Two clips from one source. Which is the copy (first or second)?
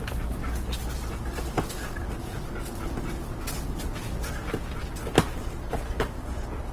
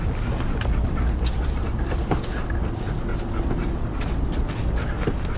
second